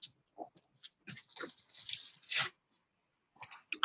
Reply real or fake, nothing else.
real